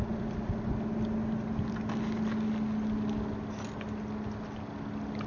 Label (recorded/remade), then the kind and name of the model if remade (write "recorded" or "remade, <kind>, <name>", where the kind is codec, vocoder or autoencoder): recorded